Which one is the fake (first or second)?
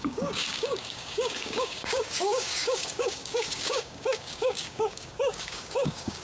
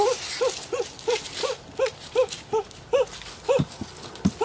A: first